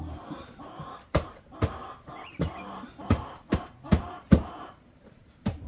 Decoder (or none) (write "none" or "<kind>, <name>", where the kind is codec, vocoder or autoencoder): vocoder, BigVGAN v2